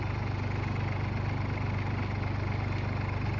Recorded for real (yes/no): yes